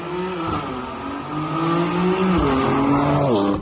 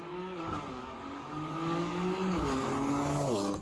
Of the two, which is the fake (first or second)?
second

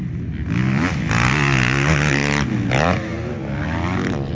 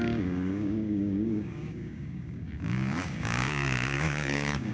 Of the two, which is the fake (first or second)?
second